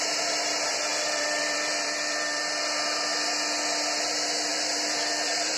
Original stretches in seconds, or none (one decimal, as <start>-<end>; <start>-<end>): 0.0-0.9; 2.4-4.5